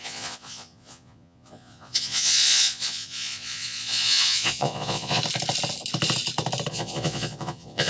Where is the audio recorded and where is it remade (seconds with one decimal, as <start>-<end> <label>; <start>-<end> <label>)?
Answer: 0.0-5.2 remade; 5.2-6.7 recorded; 6.7-7.9 remade